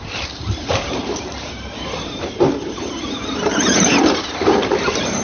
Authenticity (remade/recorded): remade